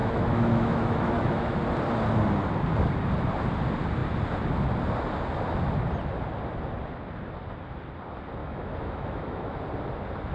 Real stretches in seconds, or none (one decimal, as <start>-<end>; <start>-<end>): 1.6-8.4; 9.6-10.3